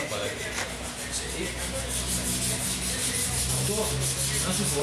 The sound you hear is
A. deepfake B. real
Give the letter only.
B